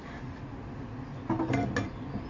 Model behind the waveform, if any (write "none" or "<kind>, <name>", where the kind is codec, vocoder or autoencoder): none